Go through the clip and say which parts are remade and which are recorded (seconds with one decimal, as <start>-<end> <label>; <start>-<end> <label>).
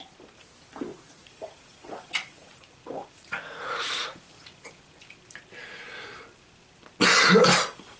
0.0-0.9 recorded; 0.9-5.0 remade; 5.0-8.0 recorded